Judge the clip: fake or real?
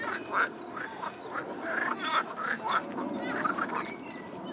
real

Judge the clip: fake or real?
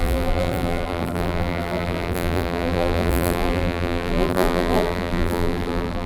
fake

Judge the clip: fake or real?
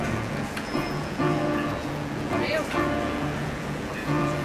fake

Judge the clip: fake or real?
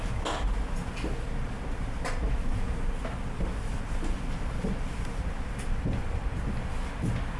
real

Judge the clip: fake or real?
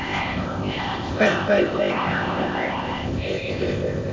fake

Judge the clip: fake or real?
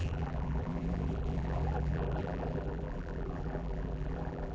fake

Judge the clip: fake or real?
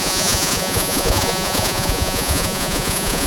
fake